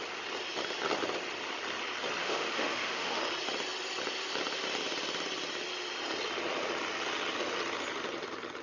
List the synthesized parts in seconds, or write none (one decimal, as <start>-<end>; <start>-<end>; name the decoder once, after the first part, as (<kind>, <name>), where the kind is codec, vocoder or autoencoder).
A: 2.2-3.2 (autoencoder, DAC-VAE)

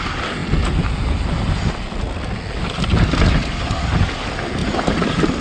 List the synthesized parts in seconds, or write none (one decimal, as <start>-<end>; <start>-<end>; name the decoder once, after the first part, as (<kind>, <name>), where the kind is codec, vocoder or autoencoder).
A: none

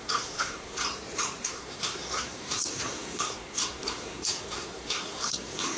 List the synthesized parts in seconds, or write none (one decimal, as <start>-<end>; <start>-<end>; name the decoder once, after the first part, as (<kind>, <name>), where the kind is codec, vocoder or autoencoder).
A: 0.0-0.8 (codec, SNAC); 1.4-5.8